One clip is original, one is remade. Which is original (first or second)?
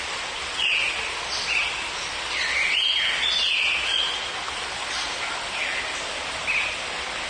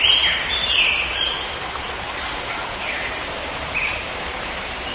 first